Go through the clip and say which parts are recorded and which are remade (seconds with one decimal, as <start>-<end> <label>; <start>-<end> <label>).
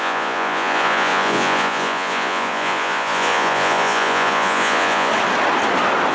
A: 0.0-5.1 remade; 5.1-6.1 recorded